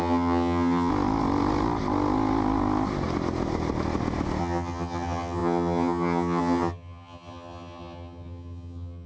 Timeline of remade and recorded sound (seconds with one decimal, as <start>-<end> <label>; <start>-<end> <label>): 0.0-0.9 remade; 0.9-4.4 recorded; 4.4-9.1 remade